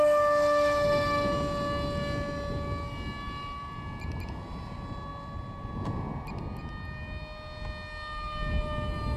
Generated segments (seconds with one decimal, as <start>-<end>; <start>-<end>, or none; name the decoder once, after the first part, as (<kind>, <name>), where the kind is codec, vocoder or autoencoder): none